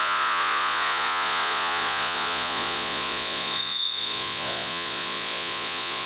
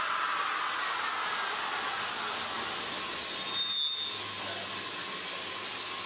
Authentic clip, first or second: second